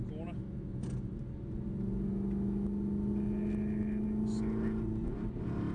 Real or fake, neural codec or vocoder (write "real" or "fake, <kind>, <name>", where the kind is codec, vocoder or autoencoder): real